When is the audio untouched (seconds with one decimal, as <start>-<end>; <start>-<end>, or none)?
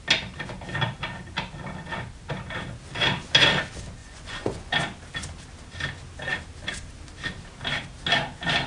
0.0-4.0; 4.7-8.7